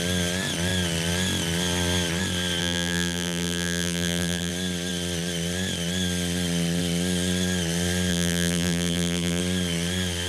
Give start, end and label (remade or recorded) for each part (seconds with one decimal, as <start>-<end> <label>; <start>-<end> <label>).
0.0-2.6 recorded; 2.6-4.5 remade; 4.5-8.1 recorded; 8.1-9.4 remade; 9.4-10.3 recorded